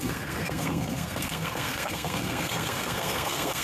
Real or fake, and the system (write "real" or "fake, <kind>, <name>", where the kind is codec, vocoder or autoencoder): fake, codec, SNAC